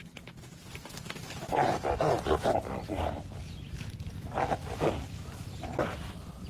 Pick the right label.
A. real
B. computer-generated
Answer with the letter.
A